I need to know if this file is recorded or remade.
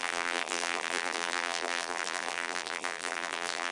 remade